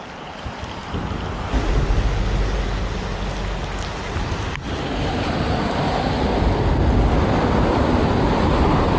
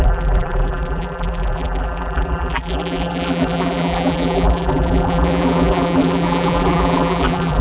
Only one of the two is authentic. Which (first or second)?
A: first